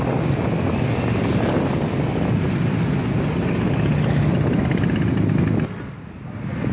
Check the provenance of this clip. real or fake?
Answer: real